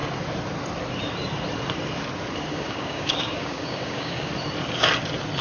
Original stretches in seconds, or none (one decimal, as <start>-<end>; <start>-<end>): 0.0-2.5; 4.3-5.4